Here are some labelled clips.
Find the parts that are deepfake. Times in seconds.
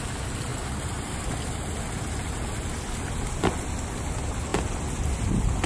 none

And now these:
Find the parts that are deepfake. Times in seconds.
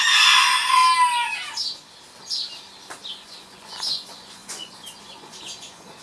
0.0-0.8 (vocoder, Vocos); 3.1-6.0